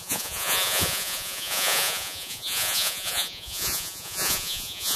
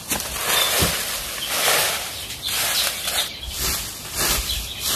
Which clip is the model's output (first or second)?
first